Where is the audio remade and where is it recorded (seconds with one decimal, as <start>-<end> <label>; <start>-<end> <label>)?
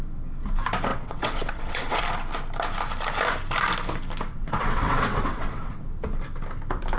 0.0-0.9 recorded; 0.9-2.0 remade; 2.0-4.3 recorded; 4.3-5.8 remade; 5.8-7.0 recorded